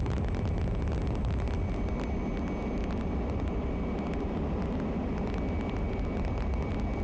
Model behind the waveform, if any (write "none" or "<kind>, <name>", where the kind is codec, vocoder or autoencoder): none